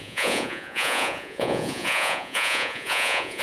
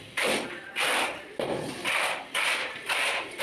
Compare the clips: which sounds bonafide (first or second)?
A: second